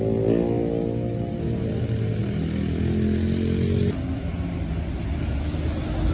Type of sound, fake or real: real